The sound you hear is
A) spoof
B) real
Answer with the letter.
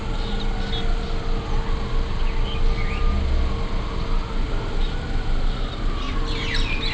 B